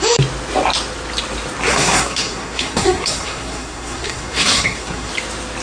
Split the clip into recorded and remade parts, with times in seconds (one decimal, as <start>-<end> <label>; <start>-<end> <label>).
0.0-1.7 recorded; 1.7-5.1 remade; 5.1-5.6 recorded